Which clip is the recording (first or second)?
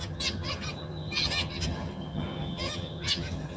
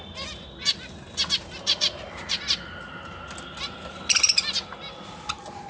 second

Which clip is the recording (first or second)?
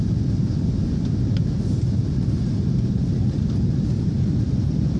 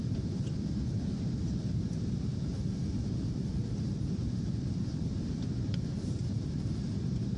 first